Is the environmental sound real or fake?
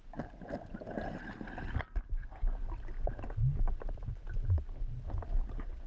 real